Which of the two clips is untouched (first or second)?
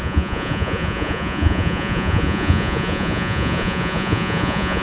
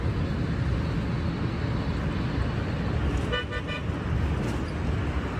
second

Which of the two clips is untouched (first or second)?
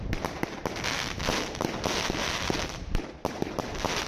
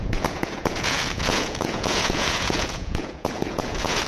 first